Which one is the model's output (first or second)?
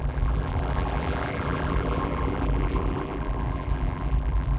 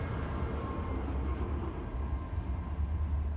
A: first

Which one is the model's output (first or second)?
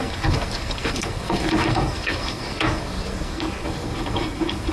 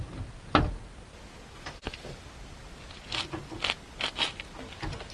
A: first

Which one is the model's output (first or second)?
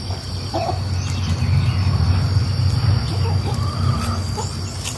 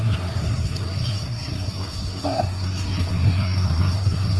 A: second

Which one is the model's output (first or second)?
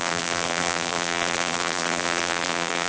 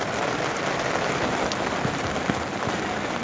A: first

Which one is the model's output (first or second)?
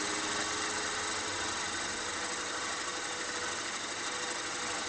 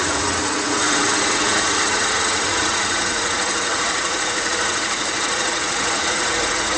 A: second